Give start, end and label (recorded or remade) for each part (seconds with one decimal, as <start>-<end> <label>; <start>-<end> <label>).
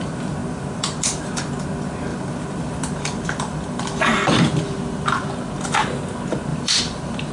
0.0-0.4 recorded; 0.4-1.4 remade; 1.4-2.1 recorded; 2.1-5.3 remade; 5.3-6.5 recorded; 6.5-7.3 remade